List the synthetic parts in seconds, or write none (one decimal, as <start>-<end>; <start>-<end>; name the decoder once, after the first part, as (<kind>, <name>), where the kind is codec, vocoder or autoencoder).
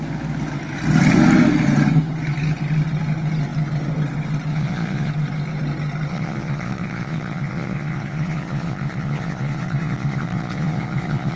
4.5-5.1 (vocoder, Vocos); 6.1-11.4